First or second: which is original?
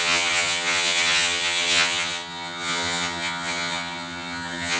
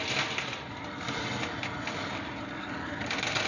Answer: second